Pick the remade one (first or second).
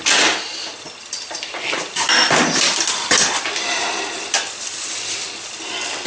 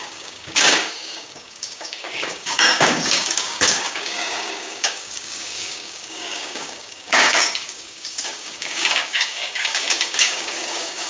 second